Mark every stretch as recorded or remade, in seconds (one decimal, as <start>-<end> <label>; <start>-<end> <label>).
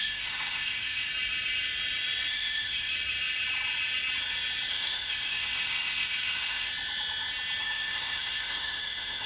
0.0-1.1 remade; 1.1-2.3 recorded; 2.3-2.9 remade; 2.9-4.7 recorded; 4.7-6.7 remade; 6.7-7.6 recorded; 7.6-9.3 remade